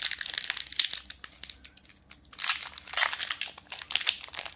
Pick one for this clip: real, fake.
real